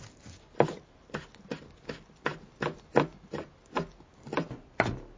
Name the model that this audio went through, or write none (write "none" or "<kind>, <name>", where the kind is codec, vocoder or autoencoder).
none